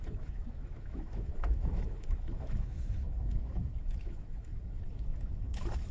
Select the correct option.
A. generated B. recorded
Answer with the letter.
A